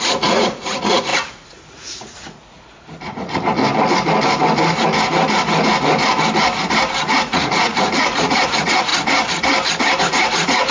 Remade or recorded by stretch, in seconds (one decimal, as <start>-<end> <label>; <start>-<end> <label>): 0.0-3.6 remade; 3.6-7.2 recorded; 7.2-8.9 remade; 8.9-10.0 recorded; 10.0-10.7 remade